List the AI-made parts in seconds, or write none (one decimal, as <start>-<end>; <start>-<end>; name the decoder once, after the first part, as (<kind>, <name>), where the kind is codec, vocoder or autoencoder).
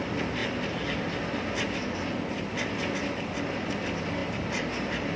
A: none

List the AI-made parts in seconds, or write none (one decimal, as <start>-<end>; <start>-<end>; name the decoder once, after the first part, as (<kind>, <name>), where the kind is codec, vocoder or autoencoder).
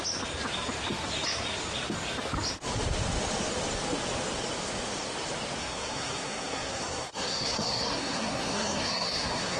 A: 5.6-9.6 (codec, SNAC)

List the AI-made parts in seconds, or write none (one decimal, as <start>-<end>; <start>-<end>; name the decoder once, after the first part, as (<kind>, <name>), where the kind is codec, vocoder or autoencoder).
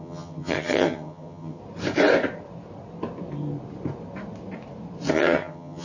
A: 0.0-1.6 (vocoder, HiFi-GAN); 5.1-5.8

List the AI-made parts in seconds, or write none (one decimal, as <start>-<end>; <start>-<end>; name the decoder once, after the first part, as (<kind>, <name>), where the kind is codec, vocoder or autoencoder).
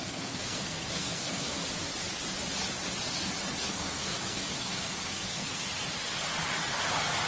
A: 0.0-1.6 (codec, SNAC); 3.6-5.7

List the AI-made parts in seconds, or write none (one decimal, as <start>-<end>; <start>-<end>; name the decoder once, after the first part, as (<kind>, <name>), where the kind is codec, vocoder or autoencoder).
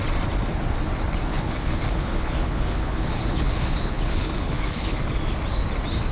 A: 1.3-5.0 (codec, HILCodec)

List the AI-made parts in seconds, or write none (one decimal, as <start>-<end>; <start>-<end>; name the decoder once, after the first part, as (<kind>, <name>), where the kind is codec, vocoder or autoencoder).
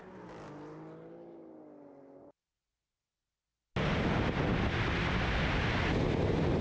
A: none